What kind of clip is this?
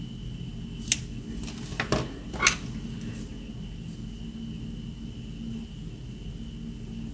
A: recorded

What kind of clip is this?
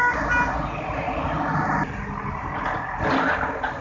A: recorded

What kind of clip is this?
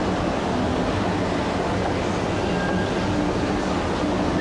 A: recorded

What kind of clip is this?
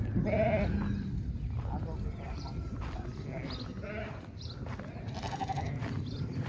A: recorded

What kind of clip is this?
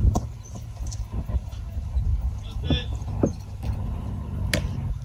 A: recorded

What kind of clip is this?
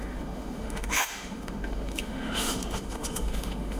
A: remade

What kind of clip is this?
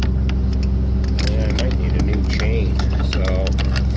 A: recorded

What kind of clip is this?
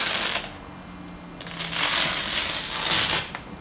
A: recorded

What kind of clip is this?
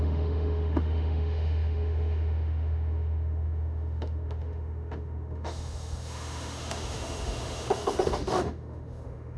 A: remade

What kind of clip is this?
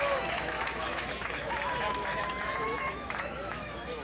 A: remade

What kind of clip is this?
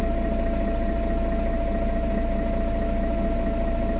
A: recorded